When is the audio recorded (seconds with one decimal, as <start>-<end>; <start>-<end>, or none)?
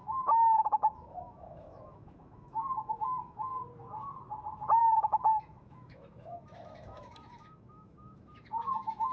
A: 3.5-4.8